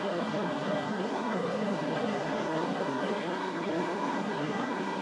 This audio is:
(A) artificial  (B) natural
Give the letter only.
A